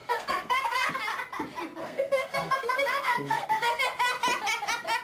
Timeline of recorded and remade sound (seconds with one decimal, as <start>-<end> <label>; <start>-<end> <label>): 0.0-0.9 remade; 0.9-1.8 recorded; 1.8-3.8 remade; 3.8-5.0 recorded